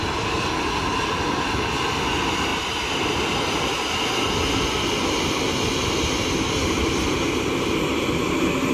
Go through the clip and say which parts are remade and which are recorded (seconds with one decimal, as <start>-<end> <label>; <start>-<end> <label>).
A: 0.0-2.5 recorded; 2.5-3.2 remade; 3.2-8.7 recorded